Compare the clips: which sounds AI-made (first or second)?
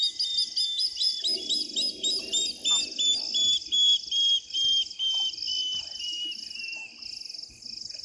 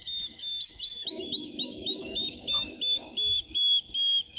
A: second